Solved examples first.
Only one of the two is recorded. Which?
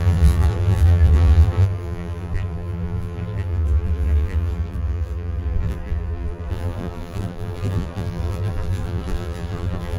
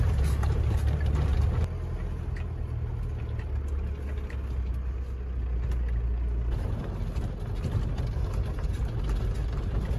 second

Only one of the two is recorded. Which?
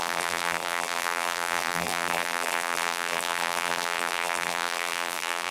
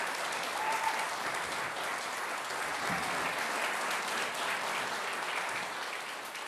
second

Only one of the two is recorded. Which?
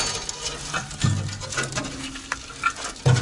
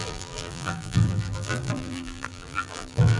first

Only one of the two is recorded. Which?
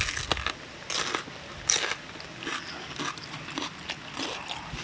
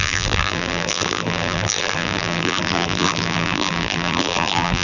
first